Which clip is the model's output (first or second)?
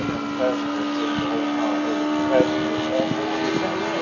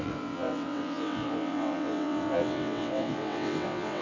second